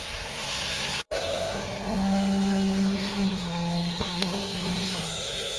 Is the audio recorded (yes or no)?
no